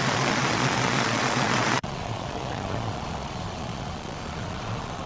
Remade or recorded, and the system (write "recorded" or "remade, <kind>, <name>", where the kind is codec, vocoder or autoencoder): remade, vocoder, Vocos